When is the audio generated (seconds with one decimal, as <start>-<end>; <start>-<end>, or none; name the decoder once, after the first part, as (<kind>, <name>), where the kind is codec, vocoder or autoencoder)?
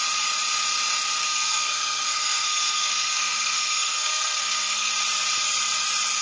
1.2-4.9 (codec, SNAC)